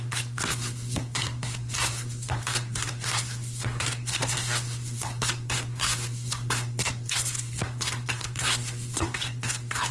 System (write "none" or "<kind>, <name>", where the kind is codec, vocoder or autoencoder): codec, SNAC